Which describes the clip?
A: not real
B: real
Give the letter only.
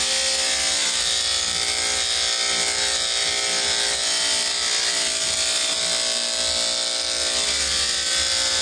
B